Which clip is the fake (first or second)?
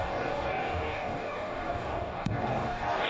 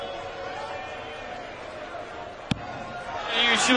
first